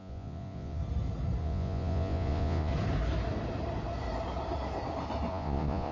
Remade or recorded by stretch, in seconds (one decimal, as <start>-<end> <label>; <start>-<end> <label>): 0.0-0.8 remade; 0.8-1.4 recorded; 1.4-2.7 remade; 2.7-5.3 recorded; 5.3-5.9 remade